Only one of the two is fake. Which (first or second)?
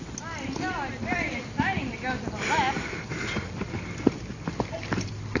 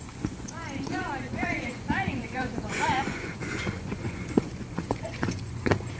second